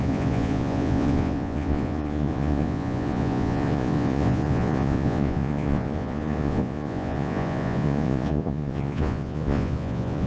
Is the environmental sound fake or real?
fake